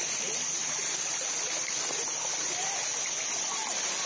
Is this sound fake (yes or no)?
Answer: no